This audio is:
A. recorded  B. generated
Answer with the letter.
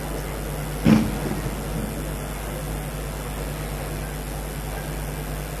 A